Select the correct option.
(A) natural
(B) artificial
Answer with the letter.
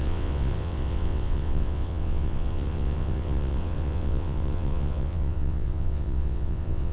B